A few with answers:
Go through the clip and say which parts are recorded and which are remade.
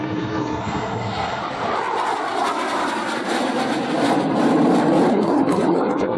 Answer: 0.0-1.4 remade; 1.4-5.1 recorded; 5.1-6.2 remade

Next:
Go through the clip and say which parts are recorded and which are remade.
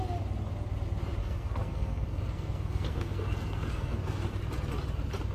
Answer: 0.0-1.2 recorded; 1.2-4.4 remade; 4.4-5.3 recorded